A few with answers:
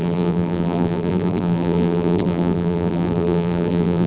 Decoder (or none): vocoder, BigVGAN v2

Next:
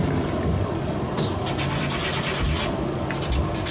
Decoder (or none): none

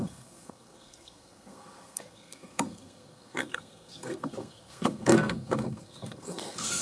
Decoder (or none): codec, SNAC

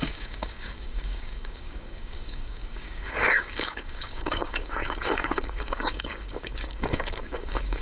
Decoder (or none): codec, DAC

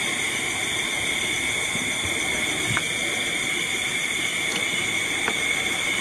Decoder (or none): none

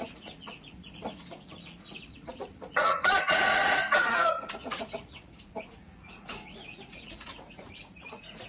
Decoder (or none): vocoder, Vocos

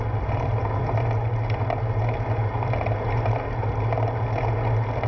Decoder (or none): none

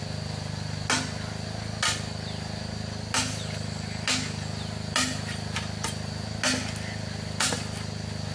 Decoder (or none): none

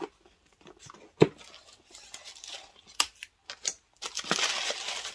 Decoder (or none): none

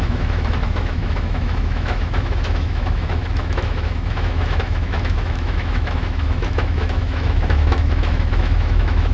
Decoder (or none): autoencoder, DAC-VAE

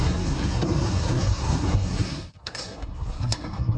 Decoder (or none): codec, SNAC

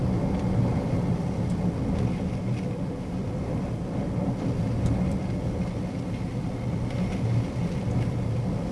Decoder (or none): none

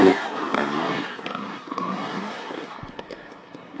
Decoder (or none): codec, SNAC